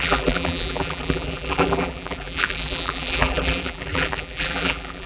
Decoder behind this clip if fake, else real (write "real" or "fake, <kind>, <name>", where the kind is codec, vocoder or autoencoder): fake, vocoder, BigVGAN v2